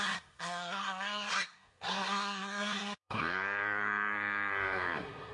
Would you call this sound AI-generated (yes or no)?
yes